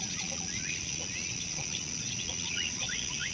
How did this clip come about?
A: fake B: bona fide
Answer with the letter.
A